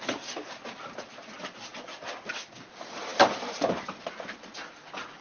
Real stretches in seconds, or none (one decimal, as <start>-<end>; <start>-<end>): 0.0-5.2